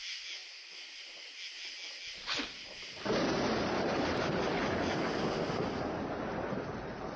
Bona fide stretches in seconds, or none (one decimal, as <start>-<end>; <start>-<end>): 0.0-3.6; 4.4-7.2